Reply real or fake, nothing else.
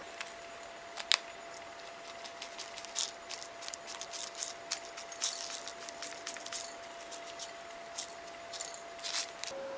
real